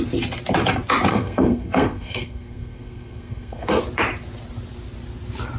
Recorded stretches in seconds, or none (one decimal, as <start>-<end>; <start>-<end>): 0.0-1.1; 3.8-5.6